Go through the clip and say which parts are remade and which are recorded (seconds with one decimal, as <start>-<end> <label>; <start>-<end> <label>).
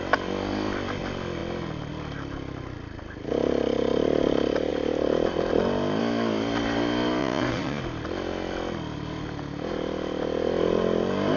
0.0-7.2 recorded; 7.2-7.8 remade; 7.8-11.4 recorded